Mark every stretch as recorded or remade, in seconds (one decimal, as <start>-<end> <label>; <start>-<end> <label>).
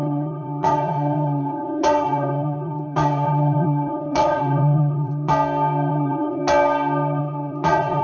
0.0-5.3 remade; 5.3-5.9 recorded; 5.9-6.4 remade; 6.4-7.2 recorded; 7.2-8.0 remade